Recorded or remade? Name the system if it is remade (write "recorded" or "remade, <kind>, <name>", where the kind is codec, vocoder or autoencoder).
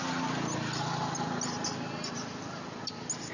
recorded